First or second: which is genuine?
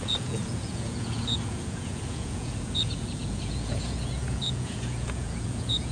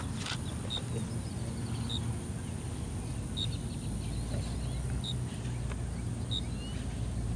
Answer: second